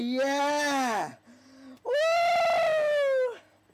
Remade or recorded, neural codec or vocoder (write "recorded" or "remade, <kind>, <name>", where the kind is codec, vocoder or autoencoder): recorded